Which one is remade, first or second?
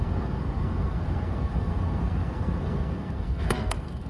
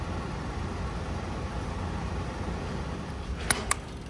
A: first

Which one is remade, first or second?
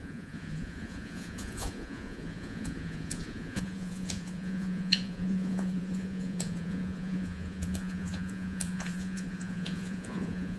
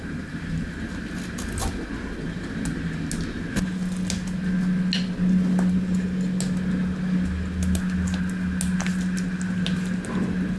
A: first